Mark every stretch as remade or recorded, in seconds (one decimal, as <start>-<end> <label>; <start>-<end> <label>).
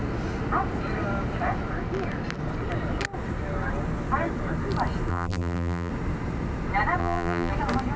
0.0-5.1 recorded; 5.1-5.9 remade; 5.9-7.0 recorded; 7.0-7.5 remade; 7.5-8.0 recorded